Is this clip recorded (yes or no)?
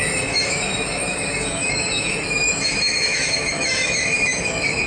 no